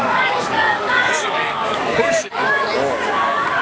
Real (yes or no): no